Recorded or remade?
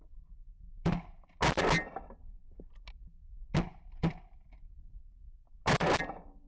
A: recorded